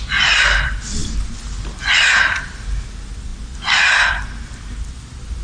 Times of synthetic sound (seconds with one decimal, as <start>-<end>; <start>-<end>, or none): none